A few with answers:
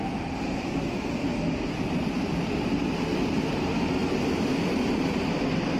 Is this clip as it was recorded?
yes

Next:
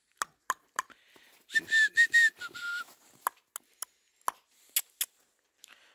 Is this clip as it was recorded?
yes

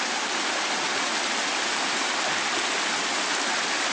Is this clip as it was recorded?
yes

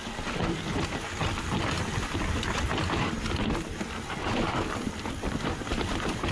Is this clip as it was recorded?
no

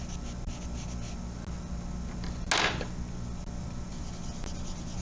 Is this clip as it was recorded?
yes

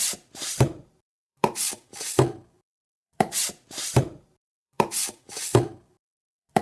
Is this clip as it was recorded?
no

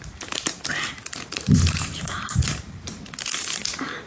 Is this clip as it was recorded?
no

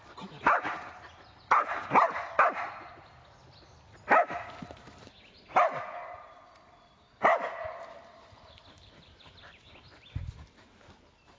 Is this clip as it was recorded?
yes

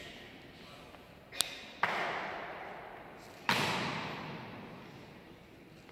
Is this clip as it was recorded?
yes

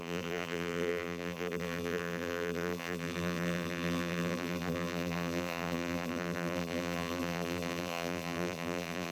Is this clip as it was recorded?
no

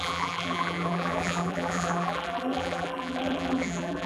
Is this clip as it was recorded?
no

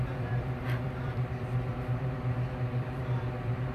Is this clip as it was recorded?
no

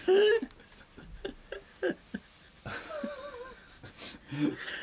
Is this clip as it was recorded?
yes